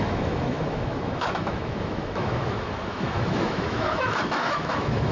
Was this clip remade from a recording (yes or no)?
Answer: yes